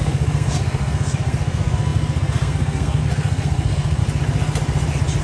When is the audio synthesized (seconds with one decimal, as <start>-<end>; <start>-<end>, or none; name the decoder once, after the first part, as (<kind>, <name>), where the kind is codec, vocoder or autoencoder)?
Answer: 0.0-4.0 (codec, SNAC)